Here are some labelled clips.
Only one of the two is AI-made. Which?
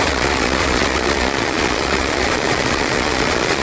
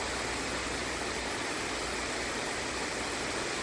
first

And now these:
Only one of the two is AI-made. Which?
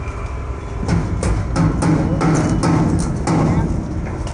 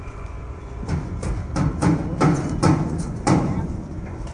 second